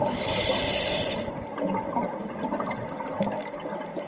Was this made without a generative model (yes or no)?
yes